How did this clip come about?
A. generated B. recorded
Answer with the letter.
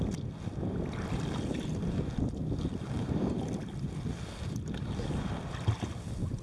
B